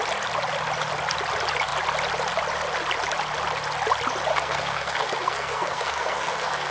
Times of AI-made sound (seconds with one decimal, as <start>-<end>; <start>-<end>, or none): 4.3-6.7